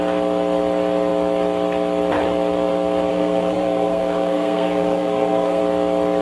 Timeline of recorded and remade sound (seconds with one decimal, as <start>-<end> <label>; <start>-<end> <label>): 0.0-3.1 recorded; 3.1-5.6 remade; 5.6-6.2 recorded